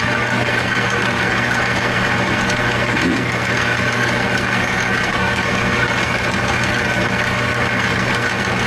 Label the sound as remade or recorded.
remade